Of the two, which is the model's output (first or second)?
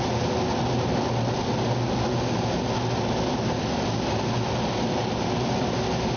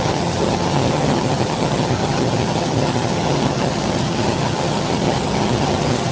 second